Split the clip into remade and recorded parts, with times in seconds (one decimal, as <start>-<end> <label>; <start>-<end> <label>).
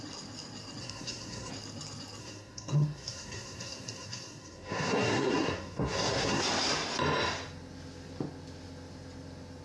0.0-0.8 recorded; 0.8-1.5 remade; 1.5-2.2 recorded; 2.2-6.4 remade; 6.4-9.6 recorded